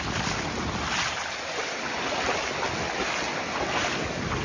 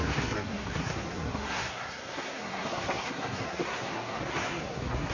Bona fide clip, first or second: first